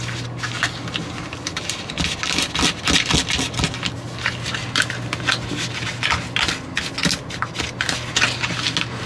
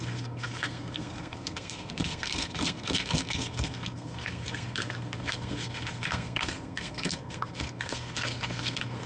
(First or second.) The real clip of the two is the first